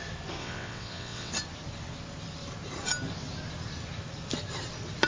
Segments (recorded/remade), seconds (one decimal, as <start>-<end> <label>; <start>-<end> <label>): 0.0-0.4 recorded; 0.4-1.3 remade; 1.3-5.1 recorded